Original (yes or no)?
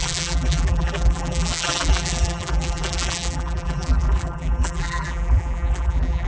no